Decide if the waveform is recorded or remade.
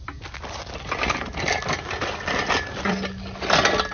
recorded